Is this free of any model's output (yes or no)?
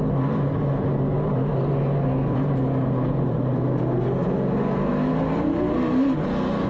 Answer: yes